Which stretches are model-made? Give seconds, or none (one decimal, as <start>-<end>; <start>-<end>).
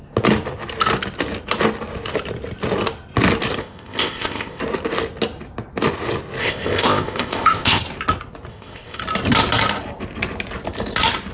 3.6-4.6; 6.4-7.8; 8.5-9.0